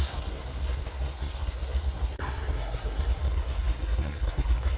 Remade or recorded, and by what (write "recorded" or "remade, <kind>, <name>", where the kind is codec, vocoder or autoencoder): remade, codec, SNAC